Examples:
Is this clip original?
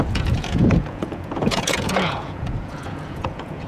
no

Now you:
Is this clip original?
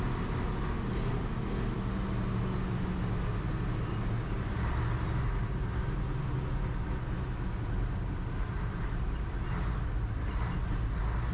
yes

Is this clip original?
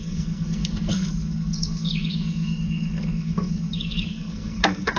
no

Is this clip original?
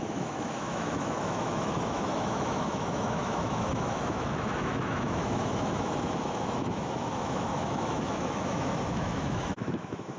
no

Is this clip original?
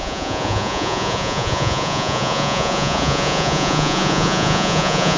no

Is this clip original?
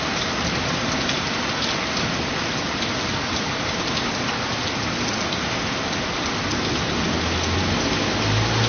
yes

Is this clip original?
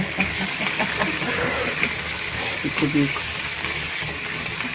no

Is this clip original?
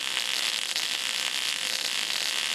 yes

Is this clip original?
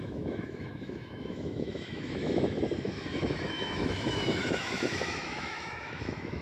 no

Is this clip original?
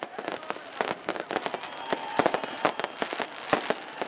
yes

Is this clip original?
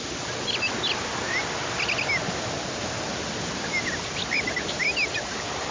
yes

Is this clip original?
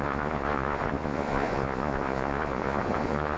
no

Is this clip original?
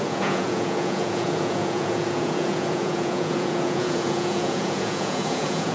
no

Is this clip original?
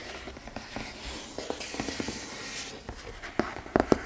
yes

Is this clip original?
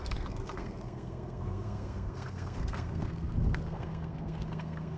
no